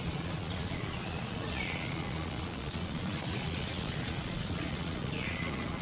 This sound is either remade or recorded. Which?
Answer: remade